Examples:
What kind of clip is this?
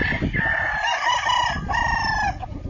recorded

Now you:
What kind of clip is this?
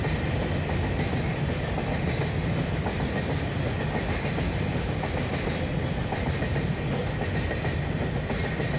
recorded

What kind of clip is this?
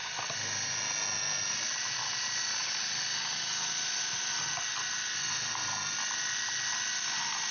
recorded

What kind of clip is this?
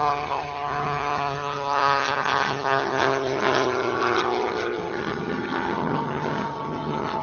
remade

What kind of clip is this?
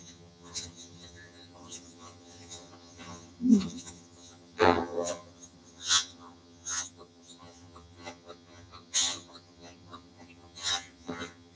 remade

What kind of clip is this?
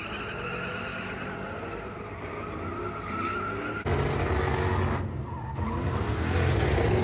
recorded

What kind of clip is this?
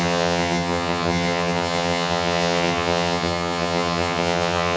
remade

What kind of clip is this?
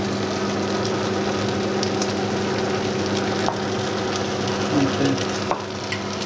recorded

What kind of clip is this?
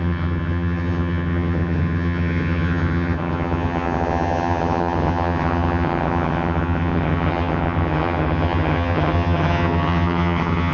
remade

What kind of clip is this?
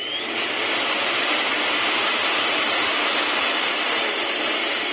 recorded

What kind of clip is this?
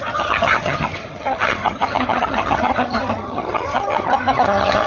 remade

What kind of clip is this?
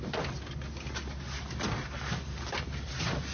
recorded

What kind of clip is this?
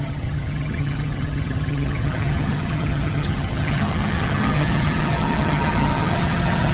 remade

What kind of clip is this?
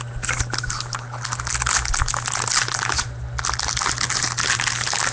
recorded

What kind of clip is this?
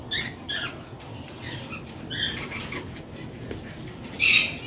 recorded